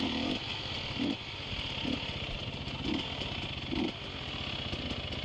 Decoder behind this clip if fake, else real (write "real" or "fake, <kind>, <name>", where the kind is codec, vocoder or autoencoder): real